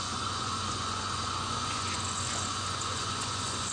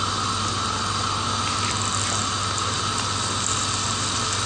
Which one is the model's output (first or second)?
first